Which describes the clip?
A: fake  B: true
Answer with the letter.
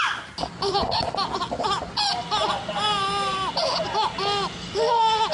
B